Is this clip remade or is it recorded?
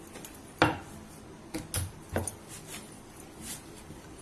recorded